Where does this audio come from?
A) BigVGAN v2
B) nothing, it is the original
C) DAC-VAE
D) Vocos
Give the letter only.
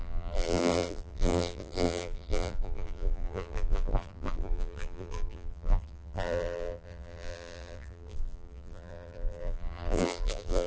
A